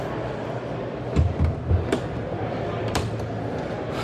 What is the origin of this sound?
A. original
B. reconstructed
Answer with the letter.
A